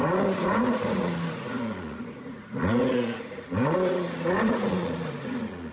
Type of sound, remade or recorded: remade